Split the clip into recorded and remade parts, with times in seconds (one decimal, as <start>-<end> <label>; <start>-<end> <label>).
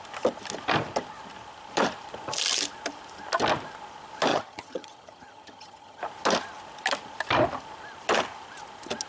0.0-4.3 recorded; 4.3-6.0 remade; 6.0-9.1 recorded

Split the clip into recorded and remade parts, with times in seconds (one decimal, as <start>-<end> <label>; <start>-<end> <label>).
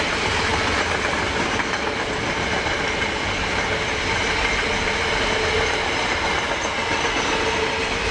0.0-8.1 recorded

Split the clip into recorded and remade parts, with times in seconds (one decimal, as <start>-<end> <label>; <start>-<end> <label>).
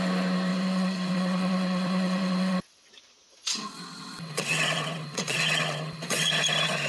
0.0-0.5 recorded; 0.5-2.9 remade; 2.9-3.3 recorded; 3.3-6.3 remade; 6.3-6.9 recorded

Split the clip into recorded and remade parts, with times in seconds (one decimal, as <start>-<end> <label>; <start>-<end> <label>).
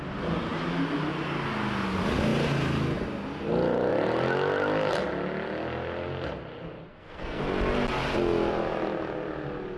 0.0-6.9 recorded; 6.9-7.4 remade; 7.4-9.8 recorded